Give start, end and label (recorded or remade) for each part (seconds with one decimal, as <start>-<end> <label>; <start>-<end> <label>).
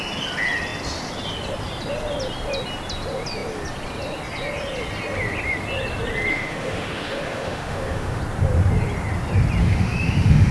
0.0-6.3 recorded; 6.3-8.2 remade; 8.2-9.6 recorded; 9.6-10.5 remade